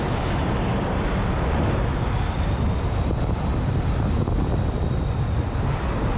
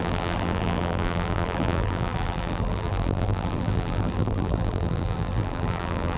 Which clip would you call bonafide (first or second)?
first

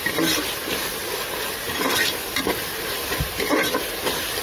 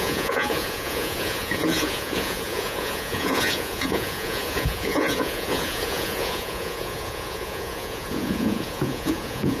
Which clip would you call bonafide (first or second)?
first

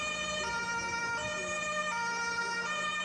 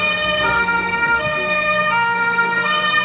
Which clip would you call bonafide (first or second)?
first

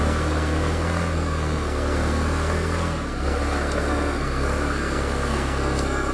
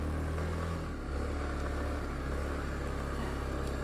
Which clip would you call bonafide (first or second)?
second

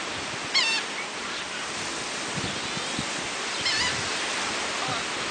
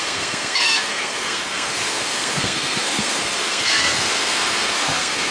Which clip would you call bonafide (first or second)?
first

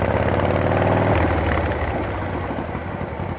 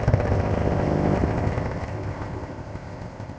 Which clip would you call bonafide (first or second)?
first